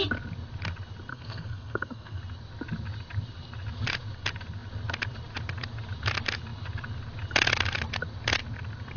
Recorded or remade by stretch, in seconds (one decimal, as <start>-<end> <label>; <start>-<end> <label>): 0.0-1.1 recorded; 1.1-2.2 remade; 2.2-9.0 recorded